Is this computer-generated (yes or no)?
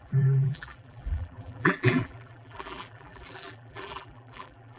yes